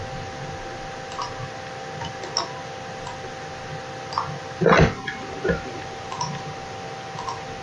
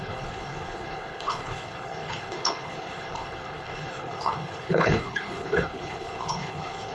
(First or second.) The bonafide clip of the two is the first